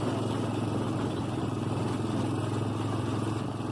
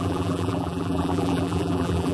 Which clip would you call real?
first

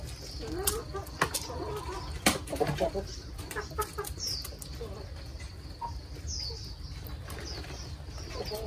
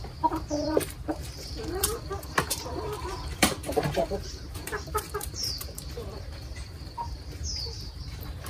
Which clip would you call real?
first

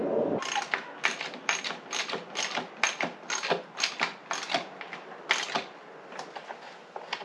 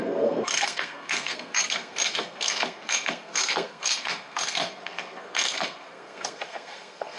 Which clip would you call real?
first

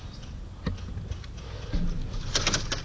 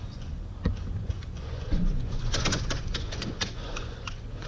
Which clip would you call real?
first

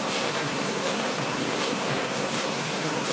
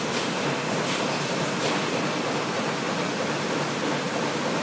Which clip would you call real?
second